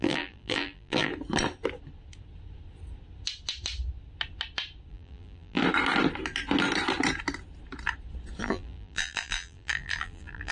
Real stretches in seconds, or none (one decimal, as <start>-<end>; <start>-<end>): 1.1-4.9; 5.6-8.4